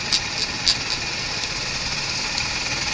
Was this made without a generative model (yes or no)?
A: yes